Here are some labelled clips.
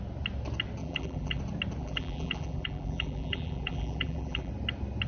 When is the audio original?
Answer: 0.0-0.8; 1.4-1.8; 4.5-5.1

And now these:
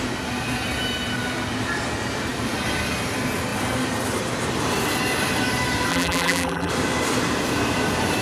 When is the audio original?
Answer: 0.0-5.9; 6.7-8.2

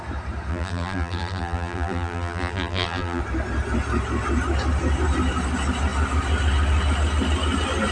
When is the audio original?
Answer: 0.0-0.5; 3.2-7.9

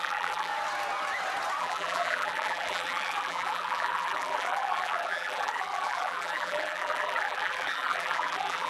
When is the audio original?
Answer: 0.5-1.6